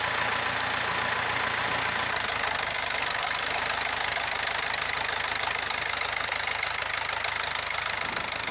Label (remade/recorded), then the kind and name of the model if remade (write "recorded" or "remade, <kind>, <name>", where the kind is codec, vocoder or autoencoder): recorded